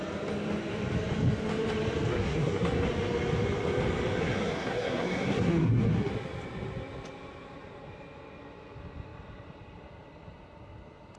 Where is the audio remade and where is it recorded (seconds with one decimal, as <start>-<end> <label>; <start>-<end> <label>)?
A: 0.0-2.1 recorded; 2.1-2.9 remade; 2.9-4.2 recorded; 4.2-6.1 remade; 6.1-11.2 recorded